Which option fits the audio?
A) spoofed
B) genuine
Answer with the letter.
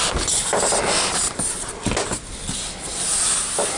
B